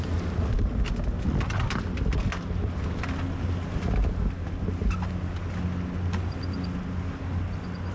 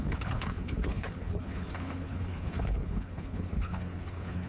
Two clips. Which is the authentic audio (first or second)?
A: first